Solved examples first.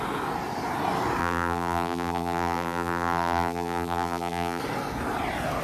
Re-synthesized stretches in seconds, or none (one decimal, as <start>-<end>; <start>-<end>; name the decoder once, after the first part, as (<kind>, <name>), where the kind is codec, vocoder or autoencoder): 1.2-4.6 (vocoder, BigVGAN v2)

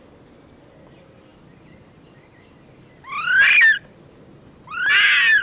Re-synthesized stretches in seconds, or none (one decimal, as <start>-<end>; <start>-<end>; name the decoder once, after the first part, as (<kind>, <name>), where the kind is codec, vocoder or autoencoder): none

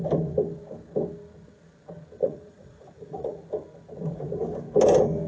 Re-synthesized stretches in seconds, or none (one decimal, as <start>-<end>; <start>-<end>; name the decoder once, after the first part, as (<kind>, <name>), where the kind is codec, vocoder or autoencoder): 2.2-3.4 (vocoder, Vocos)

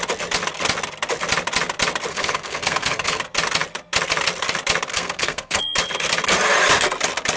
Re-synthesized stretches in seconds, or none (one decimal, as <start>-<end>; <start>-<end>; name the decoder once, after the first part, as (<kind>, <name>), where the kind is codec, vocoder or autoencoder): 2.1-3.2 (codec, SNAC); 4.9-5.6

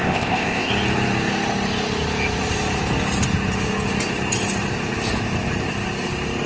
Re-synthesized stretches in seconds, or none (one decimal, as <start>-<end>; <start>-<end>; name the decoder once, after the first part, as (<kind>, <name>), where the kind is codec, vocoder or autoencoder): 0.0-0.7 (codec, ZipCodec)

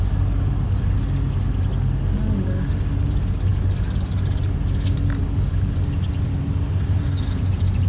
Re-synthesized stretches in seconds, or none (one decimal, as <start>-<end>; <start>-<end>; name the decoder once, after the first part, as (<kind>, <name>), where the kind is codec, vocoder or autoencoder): none